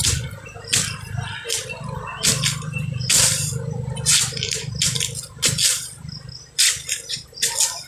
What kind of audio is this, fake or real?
real